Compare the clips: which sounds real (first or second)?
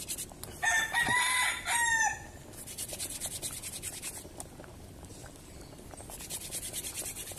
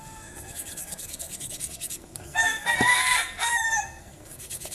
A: first